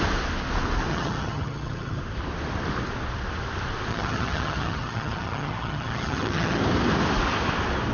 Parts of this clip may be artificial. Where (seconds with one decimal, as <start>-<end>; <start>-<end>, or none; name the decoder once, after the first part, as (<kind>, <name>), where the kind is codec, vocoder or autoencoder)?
0.9-2.0 (vocoder, HiFi-GAN); 3.9-6.6